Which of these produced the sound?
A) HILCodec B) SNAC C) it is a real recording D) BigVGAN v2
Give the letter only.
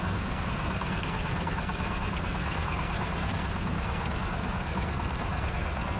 B